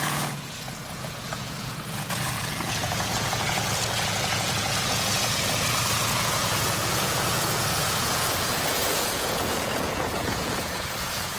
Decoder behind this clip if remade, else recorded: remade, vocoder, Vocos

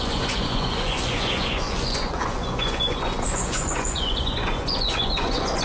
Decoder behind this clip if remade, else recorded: remade, vocoder, Vocos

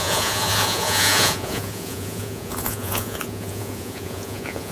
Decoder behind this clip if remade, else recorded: remade, vocoder, Vocos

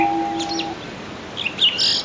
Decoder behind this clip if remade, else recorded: recorded